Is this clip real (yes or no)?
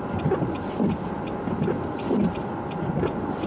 yes